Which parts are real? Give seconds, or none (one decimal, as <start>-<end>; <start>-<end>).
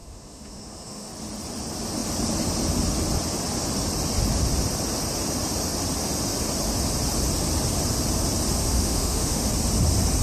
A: 1.1-8.6; 9.5-10.2